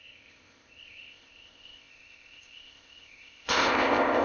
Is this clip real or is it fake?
fake